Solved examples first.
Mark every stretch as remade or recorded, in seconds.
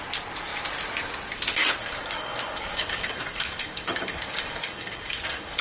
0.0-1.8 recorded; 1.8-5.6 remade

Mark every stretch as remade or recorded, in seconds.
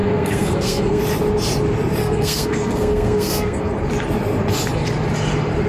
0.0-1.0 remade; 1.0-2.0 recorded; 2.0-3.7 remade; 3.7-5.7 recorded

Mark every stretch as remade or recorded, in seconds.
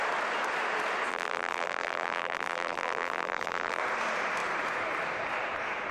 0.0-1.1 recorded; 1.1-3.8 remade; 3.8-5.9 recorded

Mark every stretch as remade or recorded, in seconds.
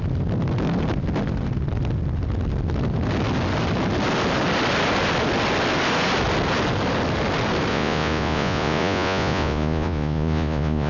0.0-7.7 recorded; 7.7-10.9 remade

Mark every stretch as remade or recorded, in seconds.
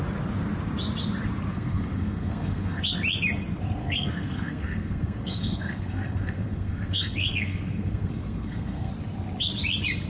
0.0-1.5 recorded; 1.5-2.8 remade; 2.8-3.8 recorded; 3.8-8.9 remade; 8.9-10.1 recorded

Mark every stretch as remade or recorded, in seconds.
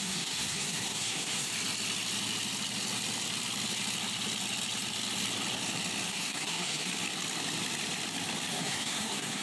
0.0-1.5 remade; 1.5-6.1 recorded; 6.1-6.9 remade; 6.9-8.5 recorded; 8.5-9.4 remade